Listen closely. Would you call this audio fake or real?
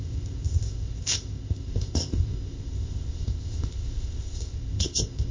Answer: fake